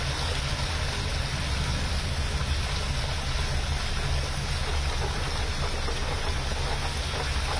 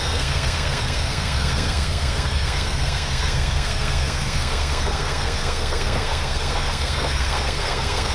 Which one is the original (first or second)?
first